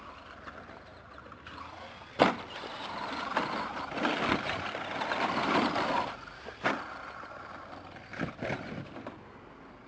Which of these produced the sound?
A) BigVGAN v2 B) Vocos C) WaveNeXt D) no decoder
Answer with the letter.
D